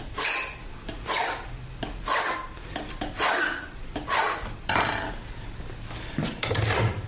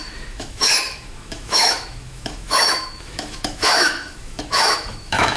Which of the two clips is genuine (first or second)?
first